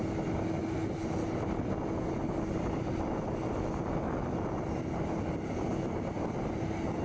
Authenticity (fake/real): real